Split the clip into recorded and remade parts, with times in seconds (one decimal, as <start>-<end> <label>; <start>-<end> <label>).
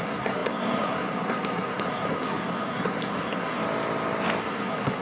0.0-3.6 remade; 3.6-4.4 recorded; 4.4-5.0 remade